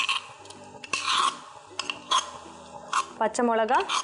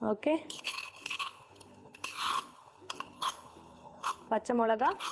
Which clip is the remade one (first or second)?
second